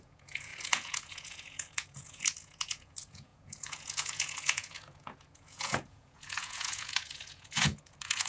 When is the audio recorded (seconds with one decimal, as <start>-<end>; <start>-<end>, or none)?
none

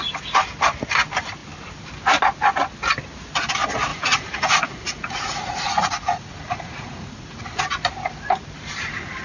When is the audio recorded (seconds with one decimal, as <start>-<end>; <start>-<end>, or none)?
0.0-3.9; 7.4-9.2

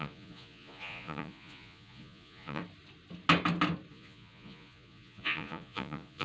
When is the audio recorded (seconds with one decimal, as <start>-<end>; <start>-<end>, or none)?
2.6-3.9

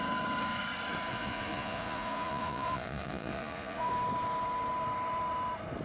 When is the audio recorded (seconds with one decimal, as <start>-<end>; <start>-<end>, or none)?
0.0-1.1; 3.9-5.8

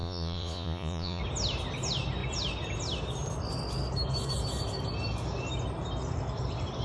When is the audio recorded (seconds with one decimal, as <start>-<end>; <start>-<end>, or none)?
1.2-6.8

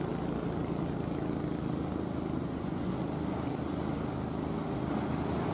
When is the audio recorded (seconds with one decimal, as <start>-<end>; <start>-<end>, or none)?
0.0-2.4; 2.9-5.5

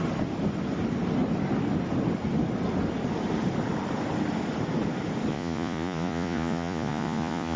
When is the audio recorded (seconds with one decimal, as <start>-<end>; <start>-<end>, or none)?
0.0-5.3

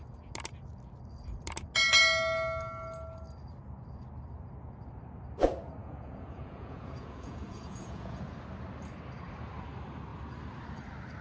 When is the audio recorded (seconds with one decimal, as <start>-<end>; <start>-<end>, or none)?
0.0-5.8; 8.2-11.2